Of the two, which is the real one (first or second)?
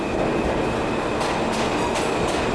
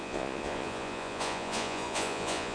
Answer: first